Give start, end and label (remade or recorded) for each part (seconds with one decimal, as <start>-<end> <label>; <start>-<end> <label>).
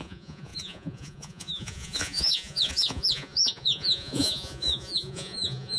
0.0-5.8 remade